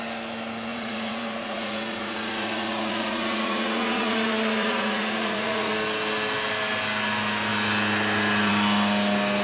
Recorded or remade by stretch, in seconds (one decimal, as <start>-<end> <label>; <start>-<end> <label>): 0.0-0.7 recorded; 0.7-5.7 remade; 5.7-9.4 recorded